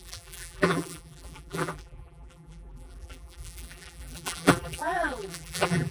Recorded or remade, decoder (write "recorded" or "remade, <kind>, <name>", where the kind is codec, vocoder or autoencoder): remade, vocoder, BigVGAN v2